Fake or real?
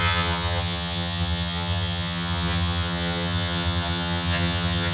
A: fake